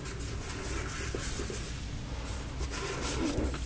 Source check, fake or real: real